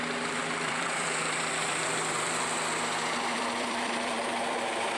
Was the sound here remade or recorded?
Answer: remade